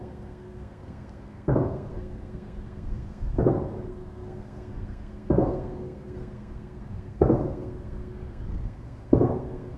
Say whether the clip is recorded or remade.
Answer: remade